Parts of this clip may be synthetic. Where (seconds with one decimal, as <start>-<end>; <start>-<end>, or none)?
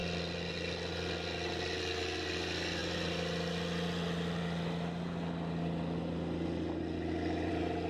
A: none